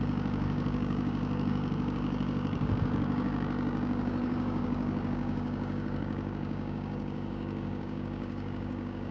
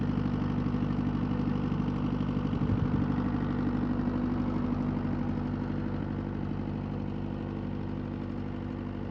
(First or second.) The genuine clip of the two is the second